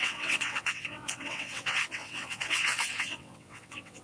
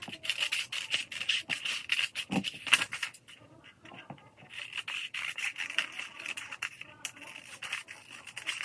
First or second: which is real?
second